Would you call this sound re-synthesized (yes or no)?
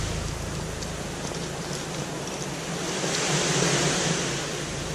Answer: no